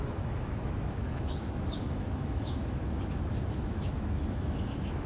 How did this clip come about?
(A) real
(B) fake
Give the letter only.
B